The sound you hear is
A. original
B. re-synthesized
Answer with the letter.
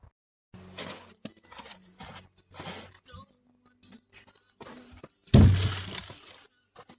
A